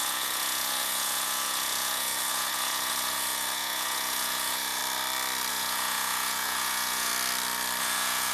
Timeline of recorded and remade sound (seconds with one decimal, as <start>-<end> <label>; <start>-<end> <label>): 0.0-4.8 remade; 4.8-5.5 recorded; 5.5-7.1 remade; 7.1-7.8 recorded; 7.8-8.3 remade